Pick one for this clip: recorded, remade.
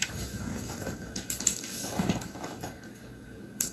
remade